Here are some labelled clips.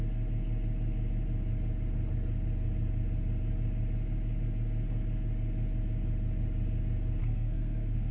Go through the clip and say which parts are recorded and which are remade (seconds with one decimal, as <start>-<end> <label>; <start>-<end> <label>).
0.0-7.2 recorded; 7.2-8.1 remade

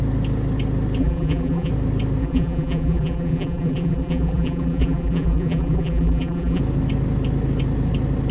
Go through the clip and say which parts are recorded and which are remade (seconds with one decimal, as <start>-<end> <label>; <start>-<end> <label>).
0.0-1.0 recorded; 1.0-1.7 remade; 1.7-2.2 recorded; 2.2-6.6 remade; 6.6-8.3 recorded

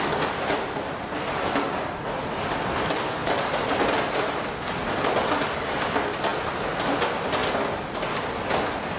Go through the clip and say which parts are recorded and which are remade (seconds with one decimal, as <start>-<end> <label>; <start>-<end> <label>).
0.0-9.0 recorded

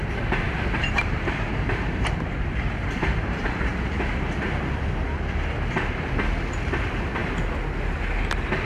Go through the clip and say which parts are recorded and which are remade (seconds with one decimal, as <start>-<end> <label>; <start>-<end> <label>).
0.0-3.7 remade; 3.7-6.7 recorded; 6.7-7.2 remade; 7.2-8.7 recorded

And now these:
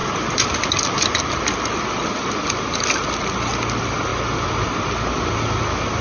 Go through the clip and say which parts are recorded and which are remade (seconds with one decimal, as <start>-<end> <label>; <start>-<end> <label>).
0.0-6.0 recorded

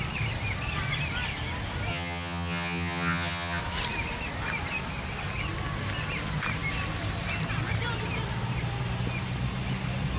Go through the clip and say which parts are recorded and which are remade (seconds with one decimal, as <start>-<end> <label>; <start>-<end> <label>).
0.0-1.9 recorded; 1.9-3.6 remade; 3.6-10.2 recorded

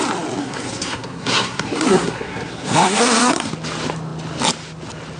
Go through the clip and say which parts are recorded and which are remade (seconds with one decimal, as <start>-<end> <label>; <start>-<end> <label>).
0.0-0.4 recorded; 0.4-3.5 remade; 3.5-5.2 recorded